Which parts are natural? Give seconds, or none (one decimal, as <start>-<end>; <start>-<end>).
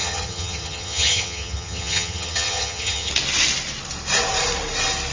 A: 3.1-5.1